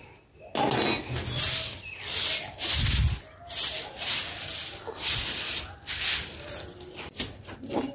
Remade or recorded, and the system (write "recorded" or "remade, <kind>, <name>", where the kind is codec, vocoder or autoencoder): recorded